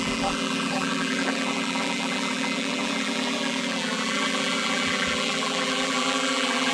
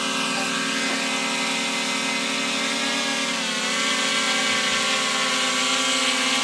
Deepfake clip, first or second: first